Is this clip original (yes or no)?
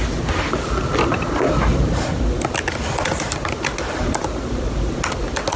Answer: yes